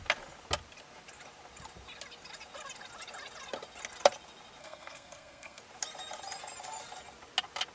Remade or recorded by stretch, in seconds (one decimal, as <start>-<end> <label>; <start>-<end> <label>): 0.0-4.6 recorded; 4.6-5.6 remade; 5.6-7.7 recorded